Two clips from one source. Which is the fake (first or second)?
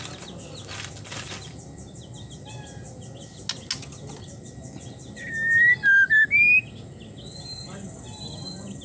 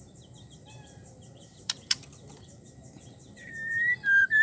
second